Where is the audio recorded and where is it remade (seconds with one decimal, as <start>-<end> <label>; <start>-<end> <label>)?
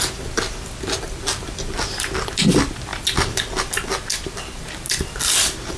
0.0-5.8 recorded